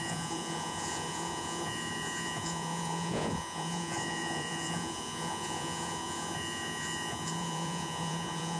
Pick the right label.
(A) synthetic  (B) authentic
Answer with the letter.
A